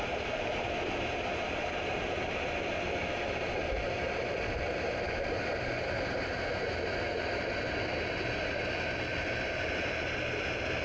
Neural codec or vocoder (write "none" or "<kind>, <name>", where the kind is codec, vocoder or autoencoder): vocoder, BigVGAN v2